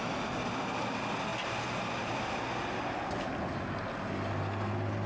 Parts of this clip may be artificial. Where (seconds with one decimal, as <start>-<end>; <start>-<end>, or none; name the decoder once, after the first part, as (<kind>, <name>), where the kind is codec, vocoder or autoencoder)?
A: none